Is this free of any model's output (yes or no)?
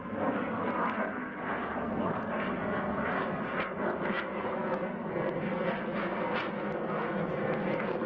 no